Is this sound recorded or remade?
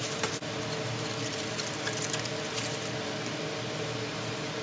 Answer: recorded